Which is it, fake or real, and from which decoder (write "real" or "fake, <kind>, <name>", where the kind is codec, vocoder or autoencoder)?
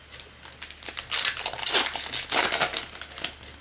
real